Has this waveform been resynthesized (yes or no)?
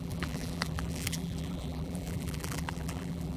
yes